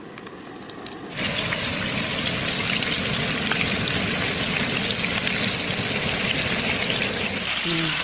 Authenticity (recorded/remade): recorded